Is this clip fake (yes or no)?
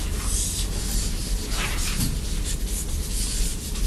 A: no